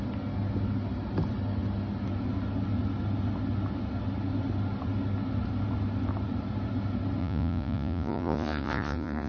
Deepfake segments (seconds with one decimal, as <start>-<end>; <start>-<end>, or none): 7.2-9.3